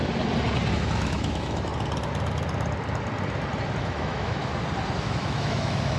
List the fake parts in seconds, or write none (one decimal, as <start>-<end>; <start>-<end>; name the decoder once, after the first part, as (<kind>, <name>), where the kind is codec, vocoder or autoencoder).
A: 0.7-1.7 (autoencoder, DAC-VAE); 3.8-4.5; 5.0-6.0